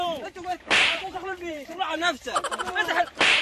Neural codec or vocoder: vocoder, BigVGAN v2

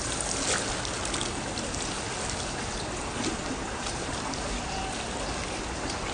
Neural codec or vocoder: none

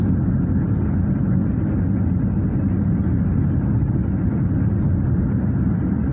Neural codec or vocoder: none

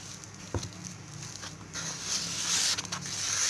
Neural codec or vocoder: none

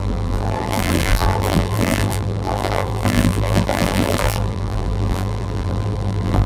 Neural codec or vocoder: vocoder, BigVGAN v2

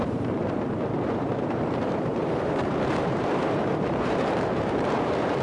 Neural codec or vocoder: vocoder, BigVGAN v2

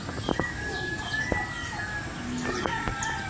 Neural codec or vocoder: none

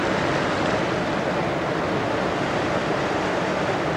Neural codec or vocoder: none